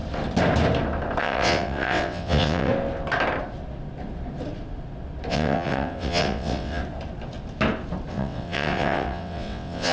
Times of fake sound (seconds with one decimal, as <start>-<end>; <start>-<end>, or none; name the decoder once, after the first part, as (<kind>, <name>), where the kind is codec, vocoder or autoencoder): 1.2-2.7 (vocoder, WaveNeXt); 5.3-6.8; 8.1-9.9